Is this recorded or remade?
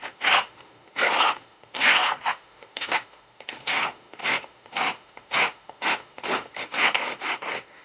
remade